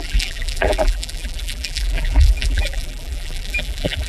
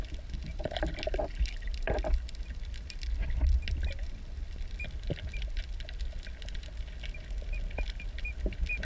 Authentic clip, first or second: second